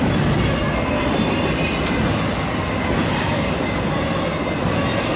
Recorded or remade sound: recorded